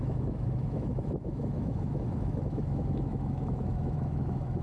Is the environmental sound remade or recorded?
remade